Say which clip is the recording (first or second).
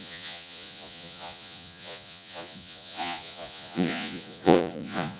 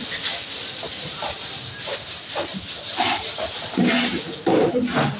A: second